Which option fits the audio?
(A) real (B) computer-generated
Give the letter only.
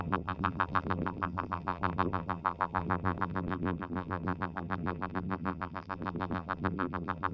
B